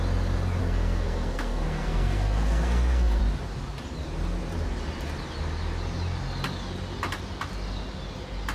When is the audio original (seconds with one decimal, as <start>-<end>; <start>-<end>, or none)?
0.0-0.6; 3.2-8.5